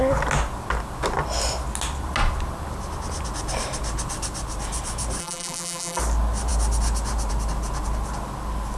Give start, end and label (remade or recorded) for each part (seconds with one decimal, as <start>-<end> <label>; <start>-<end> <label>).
0.0-5.2 recorded; 5.2-6.0 remade; 6.0-8.8 recorded